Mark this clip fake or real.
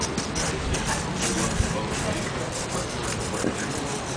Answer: real